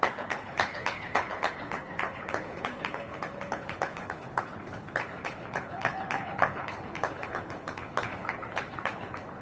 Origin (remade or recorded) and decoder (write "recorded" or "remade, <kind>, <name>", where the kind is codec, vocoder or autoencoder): remade, codec, HILCodec